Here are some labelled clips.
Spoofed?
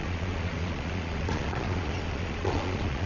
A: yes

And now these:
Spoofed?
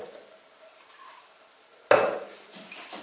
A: no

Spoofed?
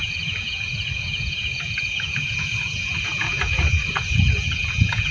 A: yes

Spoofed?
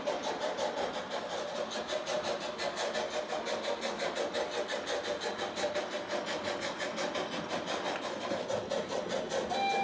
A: no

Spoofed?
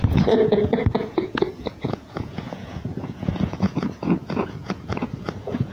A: yes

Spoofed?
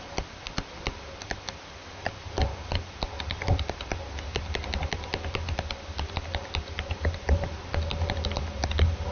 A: no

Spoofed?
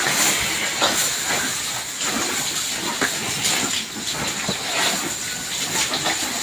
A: no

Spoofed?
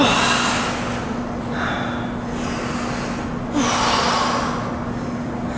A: no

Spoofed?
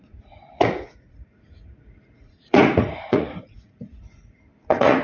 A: yes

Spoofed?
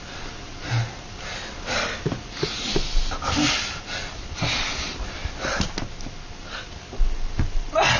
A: no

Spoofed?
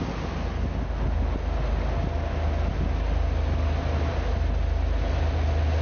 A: no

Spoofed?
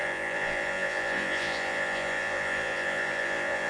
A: yes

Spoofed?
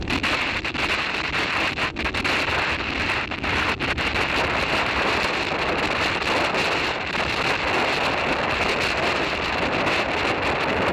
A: no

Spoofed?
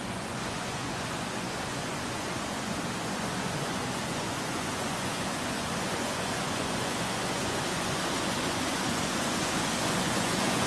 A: yes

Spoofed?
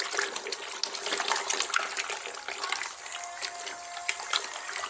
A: no